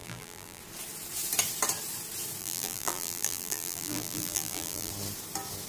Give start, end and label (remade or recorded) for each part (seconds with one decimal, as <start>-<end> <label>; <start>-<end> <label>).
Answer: 0.0-0.6 remade; 0.6-2.4 recorded; 2.4-4.9 remade; 4.9-5.7 recorded